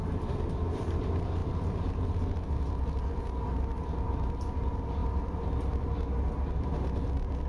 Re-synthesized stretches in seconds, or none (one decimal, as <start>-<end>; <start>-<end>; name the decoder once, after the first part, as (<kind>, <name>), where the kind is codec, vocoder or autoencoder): 0.0-7.5 (vocoder, BigVGAN v2)